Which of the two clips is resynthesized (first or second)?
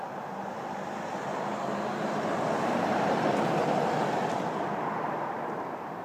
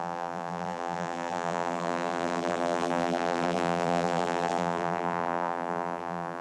second